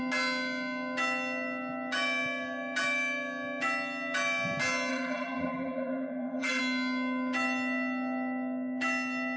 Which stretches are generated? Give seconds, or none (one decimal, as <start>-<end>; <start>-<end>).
4.9-6.6